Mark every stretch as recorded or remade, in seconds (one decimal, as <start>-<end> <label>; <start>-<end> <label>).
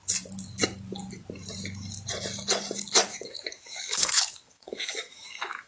0.0-3.1 recorded; 3.1-5.7 remade